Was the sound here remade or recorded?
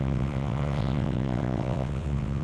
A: remade